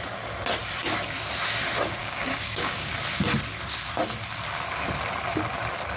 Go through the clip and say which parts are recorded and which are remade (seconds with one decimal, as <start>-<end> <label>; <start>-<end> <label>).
0.0-2.0 recorded; 2.0-2.9 remade; 2.9-6.0 recorded